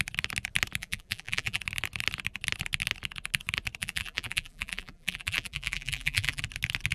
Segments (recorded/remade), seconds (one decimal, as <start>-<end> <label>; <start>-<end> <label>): 0.0-0.8 recorded; 0.8-1.6 remade; 1.6-3.8 recorded; 3.8-6.4 remade; 6.4-6.9 recorded

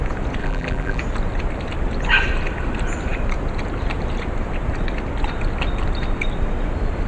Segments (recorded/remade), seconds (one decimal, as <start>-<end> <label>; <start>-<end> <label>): 0.0-0.4 recorded; 0.4-1.0 remade; 1.0-7.1 recorded

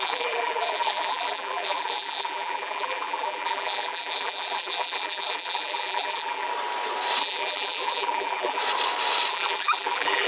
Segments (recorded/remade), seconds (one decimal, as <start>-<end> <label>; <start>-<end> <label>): 0.0-6.5 remade; 6.5-7.2 recorded; 7.2-8.6 remade; 8.6-9.3 recorded; 9.3-10.3 remade

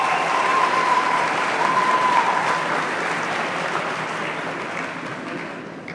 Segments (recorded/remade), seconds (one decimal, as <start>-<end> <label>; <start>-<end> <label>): 0.0-5.9 recorded

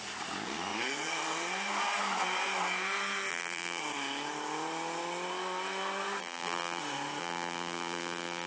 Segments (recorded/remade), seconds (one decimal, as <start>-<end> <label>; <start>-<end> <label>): 0.0-3.3 recorded; 3.3-3.8 remade; 3.8-6.2 recorded; 6.2-6.8 remade; 6.8-7.2 recorded; 7.2-8.5 remade

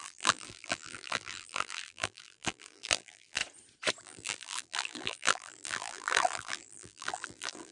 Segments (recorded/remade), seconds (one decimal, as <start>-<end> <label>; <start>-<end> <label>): 0.0-3.4 remade; 3.4-4.0 recorded; 4.0-7.7 remade

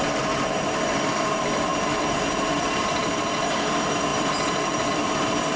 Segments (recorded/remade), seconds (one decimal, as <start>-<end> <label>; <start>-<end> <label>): 0.0-5.6 remade

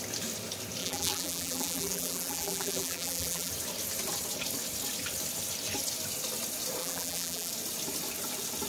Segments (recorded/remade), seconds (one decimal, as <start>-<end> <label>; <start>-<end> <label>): 0.0-0.8 recorded; 0.8-3.5 remade; 3.5-6.8 recorded; 6.8-7.5 remade; 7.5-8.7 recorded